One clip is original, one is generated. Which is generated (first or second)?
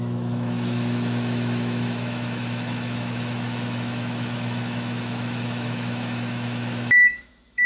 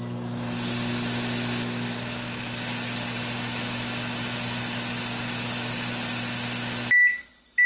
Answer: first